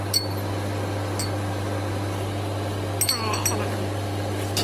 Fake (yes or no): no